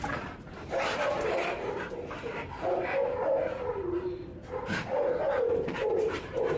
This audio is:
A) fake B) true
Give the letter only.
A